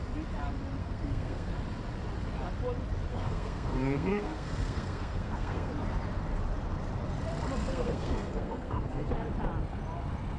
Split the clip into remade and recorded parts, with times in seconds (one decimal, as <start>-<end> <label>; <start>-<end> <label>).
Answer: 0.0-0.8 recorded; 0.8-1.5 remade; 1.5-3.1 recorded; 3.1-5.7 remade; 5.7-7.6 recorded; 7.6-9.1 remade; 9.1-10.4 recorded